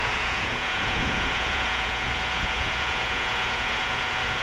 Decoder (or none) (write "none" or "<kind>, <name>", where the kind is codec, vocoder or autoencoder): vocoder, Vocos